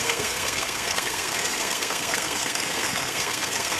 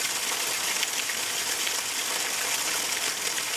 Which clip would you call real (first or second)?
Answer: second